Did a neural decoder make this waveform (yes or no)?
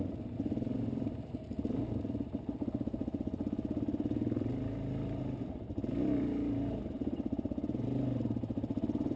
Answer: no